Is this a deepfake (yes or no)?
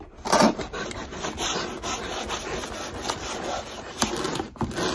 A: no